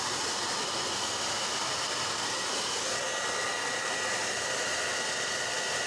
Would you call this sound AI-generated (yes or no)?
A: no